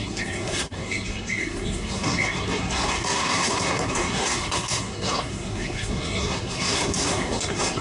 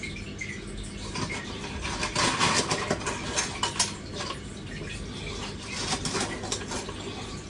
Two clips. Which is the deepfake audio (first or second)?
first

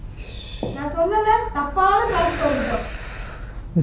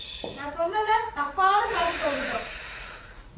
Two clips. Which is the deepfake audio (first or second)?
second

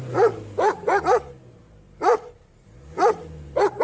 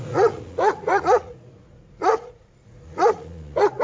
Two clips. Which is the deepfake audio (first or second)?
second